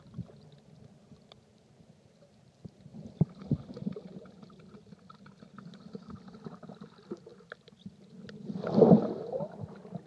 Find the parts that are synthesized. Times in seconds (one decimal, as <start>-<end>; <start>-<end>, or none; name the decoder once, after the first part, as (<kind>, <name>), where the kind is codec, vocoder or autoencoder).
none